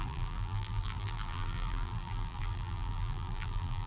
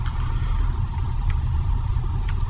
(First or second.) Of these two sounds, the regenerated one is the first